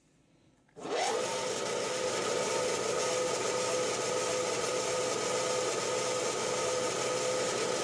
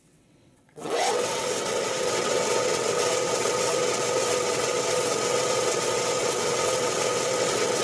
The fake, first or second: second